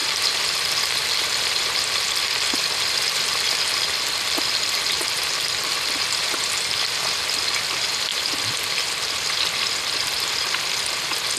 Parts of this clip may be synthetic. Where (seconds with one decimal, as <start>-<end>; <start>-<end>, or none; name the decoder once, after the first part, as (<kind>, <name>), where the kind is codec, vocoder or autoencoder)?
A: none